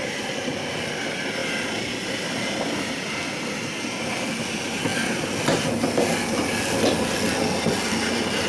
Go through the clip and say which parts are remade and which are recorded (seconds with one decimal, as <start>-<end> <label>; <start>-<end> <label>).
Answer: 0.0-8.5 recorded